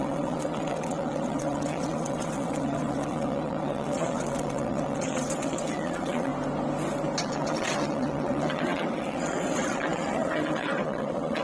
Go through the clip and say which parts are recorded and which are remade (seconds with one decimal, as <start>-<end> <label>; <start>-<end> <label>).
0.0-6.3 remade; 6.3-7.2 recorded; 7.2-11.4 remade